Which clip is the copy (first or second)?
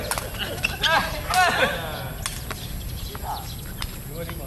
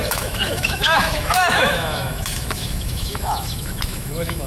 second